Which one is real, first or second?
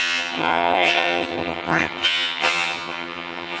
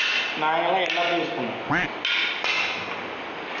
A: second